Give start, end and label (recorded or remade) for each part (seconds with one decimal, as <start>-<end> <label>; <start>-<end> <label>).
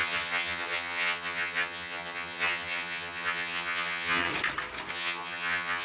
0.0-4.3 remade; 4.3-4.9 recorded; 4.9-5.8 remade